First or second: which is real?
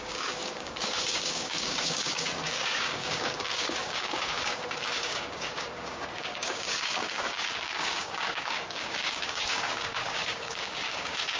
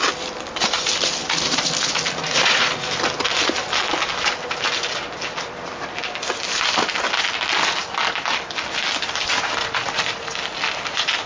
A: second